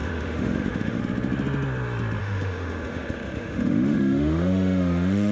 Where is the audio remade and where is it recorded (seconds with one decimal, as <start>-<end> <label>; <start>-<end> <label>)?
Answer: 0.0-1.0 remade; 1.0-2.2 recorded; 2.2-5.3 remade